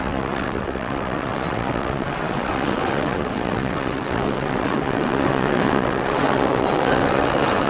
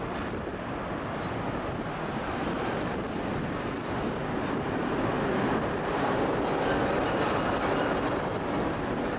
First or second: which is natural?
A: second